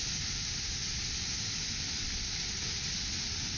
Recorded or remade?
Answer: recorded